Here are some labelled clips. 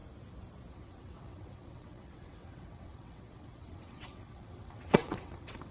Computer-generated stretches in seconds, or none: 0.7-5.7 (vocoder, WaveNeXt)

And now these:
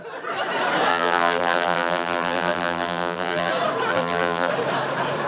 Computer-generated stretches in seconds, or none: 0.9-3.5 (vocoder, BigVGAN v2); 3.9-4.5

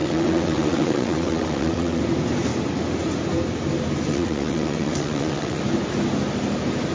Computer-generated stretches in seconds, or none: 0.0-2.0 (vocoder, WaveNeXt); 4.1-5.6

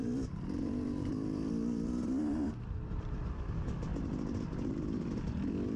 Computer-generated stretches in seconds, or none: 0.0-5.8 (vocoder, BigVGAN v2)